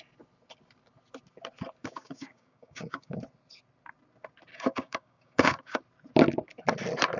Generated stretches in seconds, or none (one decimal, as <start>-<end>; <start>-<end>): 1.8-3.2; 4.5-5.8